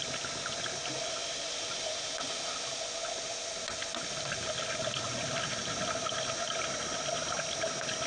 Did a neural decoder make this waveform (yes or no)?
no